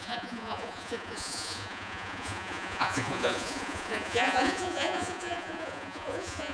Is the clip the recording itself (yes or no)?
no